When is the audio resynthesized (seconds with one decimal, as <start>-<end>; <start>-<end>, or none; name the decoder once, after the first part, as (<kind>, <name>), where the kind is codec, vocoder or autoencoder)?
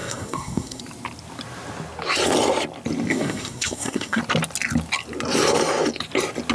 0.0-0.8 (codec, SNAC); 3.1-4.2